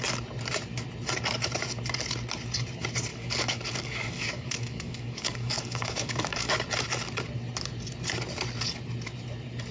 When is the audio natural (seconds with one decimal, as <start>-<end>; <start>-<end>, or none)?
0.0-3.1; 6.5-9.7